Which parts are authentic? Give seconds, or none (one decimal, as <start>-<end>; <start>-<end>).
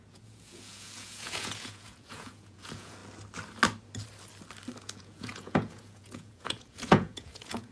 3.0-4.8